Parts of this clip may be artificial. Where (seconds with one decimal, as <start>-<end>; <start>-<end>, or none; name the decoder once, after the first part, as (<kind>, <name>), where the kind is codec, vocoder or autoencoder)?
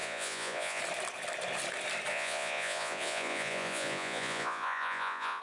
0.0-0.8 (vocoder, Vocos); 2.1-5.4